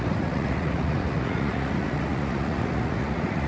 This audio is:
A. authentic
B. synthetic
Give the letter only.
B